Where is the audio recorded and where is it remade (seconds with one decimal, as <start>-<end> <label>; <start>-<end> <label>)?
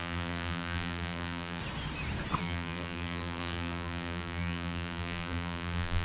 0.0-1.6 remade; 1.6-2.4 recorded; 2.4-6.0 remade